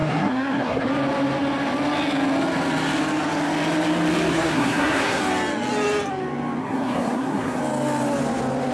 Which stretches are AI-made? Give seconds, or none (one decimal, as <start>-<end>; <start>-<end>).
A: 0.0-0.9; 4.3-5.2; 6.6-7.6